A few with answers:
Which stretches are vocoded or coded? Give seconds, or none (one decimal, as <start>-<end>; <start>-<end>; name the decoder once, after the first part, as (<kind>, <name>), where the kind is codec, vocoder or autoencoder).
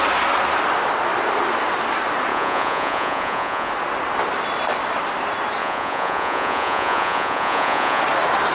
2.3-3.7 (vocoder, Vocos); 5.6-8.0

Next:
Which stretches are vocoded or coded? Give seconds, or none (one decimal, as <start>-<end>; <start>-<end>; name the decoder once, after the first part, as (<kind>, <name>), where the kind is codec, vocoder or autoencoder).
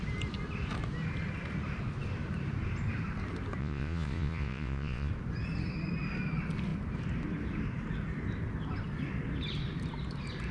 3.6-5.1 (vocoder, Vocos)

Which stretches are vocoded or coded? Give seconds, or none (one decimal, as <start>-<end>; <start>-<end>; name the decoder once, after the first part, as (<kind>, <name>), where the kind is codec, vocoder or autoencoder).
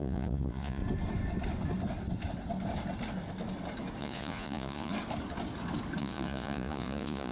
0.0-0.8 (vocoder, Vocos); 4.0-4.9; 6.0-7.3